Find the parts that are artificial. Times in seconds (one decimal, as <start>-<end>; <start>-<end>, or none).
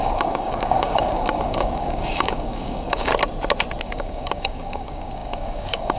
0.0-3.1; 3.8-6.0